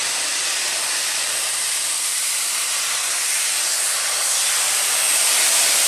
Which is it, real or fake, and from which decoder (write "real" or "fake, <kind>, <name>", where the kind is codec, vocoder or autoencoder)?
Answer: fake, vocoder, BigVGAN v2